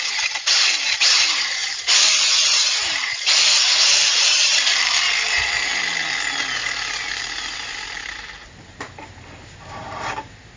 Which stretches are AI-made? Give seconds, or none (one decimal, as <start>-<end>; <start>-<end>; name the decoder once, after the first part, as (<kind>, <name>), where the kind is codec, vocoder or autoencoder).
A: 0.0-5.7 (vocoder, BigVGAN v2); 7.1-10.6